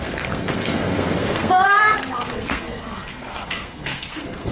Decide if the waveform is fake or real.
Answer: fake